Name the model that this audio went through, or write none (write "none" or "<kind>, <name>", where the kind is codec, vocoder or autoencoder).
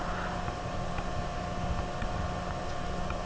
none